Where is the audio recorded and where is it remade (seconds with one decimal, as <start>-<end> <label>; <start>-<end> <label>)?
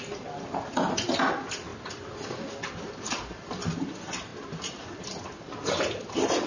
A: 0.0-4.3 recorded; 4.3-5.4 remade; 5.4-6.5 recorded